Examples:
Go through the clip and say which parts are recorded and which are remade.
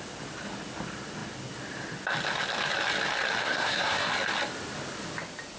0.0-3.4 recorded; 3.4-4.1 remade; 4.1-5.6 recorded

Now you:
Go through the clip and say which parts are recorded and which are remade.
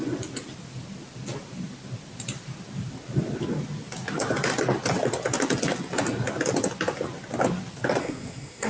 0.0-8.0 recorded; 8.0-8.7 remade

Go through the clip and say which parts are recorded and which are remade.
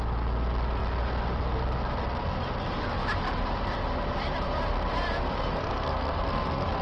0.0-5.6 recorded; 5.6-6.8 remade